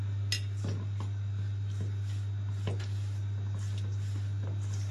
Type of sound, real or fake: real